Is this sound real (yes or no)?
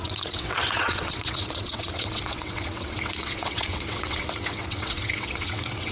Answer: no